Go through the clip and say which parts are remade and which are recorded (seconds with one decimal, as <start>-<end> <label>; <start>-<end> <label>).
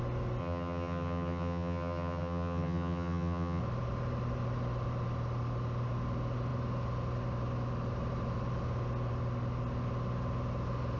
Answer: 0.0-0.4 recorded; 0.4-3.6 remade; 3.6-11.0 recorded